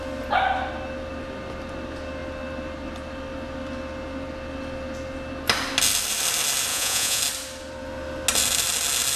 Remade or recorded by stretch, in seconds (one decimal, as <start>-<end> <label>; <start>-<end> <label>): 0.0-6.7 recorded; 6.7-7.2 remade; 7.2-9.2 recorded